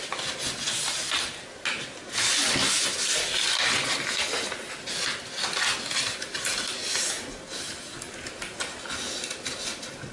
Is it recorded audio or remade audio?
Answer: recorded